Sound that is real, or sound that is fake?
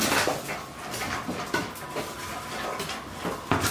real